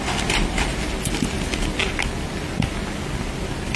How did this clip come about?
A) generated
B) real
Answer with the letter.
B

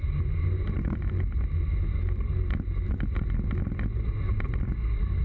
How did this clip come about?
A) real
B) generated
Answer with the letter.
A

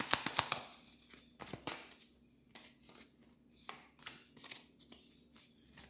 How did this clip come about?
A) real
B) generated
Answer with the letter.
A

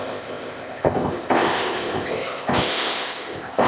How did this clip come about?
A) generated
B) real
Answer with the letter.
A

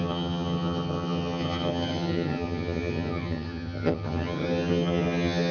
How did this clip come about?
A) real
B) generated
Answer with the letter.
B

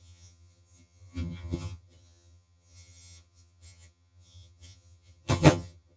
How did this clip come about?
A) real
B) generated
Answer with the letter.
B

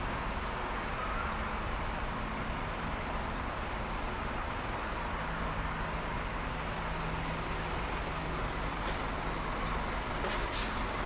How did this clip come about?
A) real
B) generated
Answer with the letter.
A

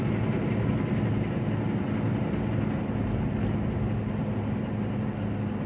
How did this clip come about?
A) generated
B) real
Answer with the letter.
B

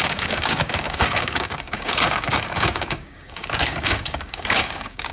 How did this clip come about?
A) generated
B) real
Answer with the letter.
A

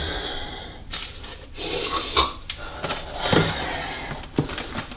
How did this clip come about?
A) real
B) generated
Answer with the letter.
A